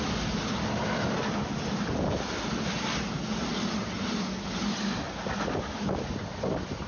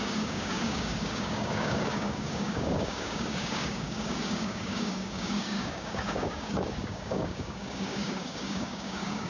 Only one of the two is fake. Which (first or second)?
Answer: second